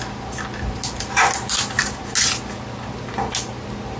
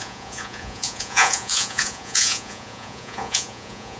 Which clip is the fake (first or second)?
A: second